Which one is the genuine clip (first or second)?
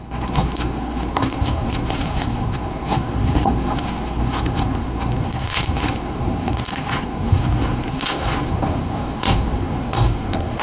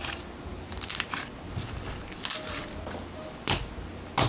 second